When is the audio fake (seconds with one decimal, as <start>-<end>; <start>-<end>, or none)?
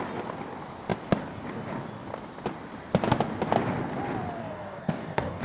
4.4-5.4